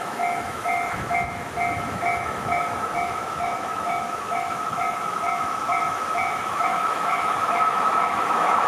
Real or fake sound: fake